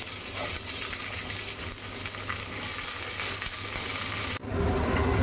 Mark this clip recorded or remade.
recorded